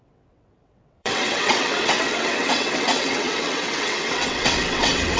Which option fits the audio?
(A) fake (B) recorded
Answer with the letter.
A